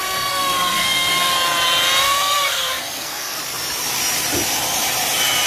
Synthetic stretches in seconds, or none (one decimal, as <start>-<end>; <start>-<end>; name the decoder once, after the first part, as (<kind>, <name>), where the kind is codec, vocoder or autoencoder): 0.0-1.3 (codec, SNAC); 2.0-3.4